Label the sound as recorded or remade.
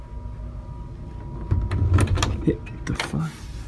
recorded